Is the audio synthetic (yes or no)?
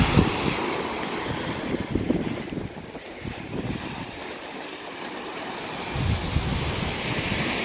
no